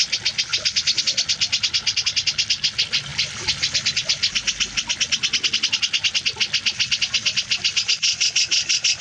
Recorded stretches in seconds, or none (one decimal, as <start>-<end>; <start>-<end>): 0.0-9.0